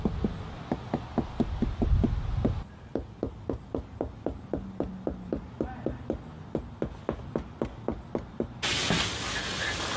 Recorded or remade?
recorded